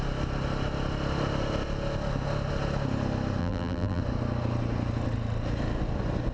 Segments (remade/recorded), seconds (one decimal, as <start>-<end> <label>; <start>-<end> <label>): 0.0-3.4 recorded; 3.4-4.0 remade; 4.0-6.3 recorded

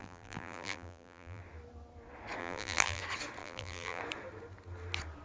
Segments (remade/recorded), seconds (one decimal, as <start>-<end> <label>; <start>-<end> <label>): 0.0-1.4 remade; 1.4-2.4 recorded; 2.4-3.0 remade; 3.0-3.4 recorded; 3.4-4.0 remade; 4.0-5.2 recorded

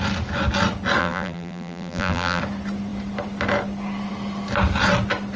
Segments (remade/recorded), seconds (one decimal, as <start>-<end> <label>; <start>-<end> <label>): 0.0-1.0 recorded; 1.0-2.4 remade; 2.4-5.4 recorded

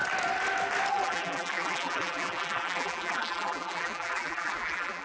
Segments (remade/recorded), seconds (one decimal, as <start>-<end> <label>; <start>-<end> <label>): 0.0-0.9 recorded; 0.9-5.0 remade

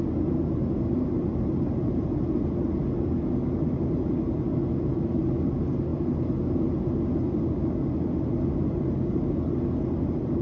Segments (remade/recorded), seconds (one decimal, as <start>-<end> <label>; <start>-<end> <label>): 0.0-0.9 recorded; 0.9-2.1 remade; 2.1-10.4 recorded

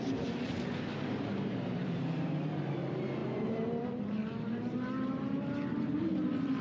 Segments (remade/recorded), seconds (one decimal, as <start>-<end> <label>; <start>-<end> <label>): 0.0-6.6 remade

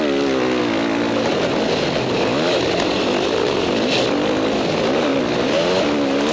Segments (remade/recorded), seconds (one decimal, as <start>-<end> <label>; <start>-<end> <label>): 0.0-6.3 recorded

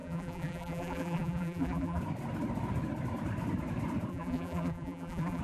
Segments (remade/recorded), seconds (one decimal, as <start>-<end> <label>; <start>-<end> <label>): 0.0-2.0 remade; 2.0-4.1 recorded; 4.1-5.4 remade